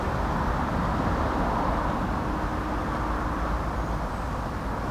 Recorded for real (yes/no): yes